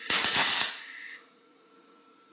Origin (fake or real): fake